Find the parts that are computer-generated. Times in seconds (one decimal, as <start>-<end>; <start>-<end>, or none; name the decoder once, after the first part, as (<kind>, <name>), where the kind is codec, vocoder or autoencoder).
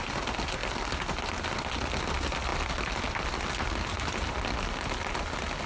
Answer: none